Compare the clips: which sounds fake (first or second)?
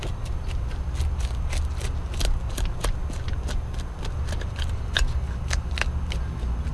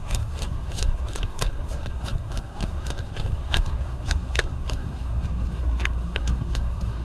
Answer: second